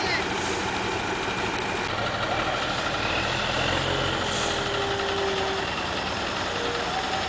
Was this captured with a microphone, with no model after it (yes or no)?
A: yes